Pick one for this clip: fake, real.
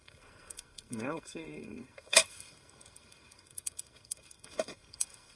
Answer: fake